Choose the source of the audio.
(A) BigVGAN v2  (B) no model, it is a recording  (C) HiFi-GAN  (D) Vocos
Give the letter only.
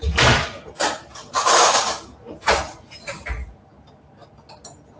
B